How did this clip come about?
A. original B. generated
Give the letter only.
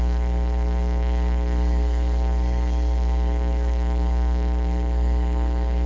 B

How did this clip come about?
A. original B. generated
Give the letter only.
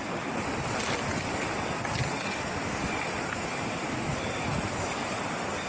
A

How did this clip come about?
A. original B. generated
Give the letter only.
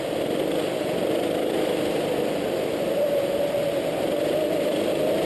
B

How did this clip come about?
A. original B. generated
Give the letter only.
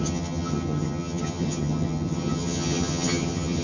B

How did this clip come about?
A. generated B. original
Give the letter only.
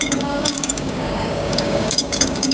A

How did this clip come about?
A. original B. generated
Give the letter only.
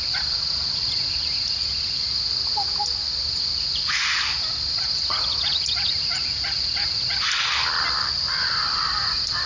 A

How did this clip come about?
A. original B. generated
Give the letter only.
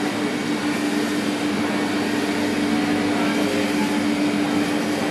A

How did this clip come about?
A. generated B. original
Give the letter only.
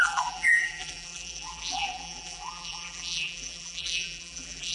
A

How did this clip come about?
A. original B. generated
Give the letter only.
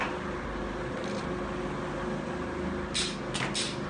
A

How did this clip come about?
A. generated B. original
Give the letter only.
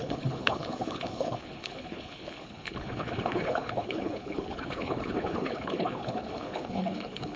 A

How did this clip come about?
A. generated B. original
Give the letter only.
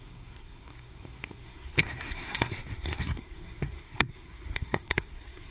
A